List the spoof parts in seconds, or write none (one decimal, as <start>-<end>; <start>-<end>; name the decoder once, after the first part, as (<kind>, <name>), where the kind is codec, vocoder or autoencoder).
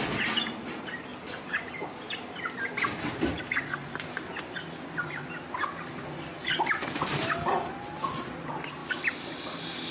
3.8-4.3 (vocoder, BigVGAN v2)